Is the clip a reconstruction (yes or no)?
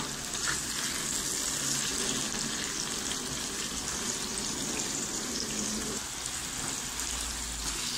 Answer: no